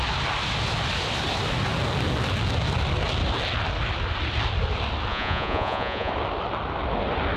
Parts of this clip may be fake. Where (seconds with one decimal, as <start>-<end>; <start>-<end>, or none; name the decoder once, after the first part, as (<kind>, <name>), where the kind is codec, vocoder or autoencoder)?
5.1-6.1 (vocoder, Vocos)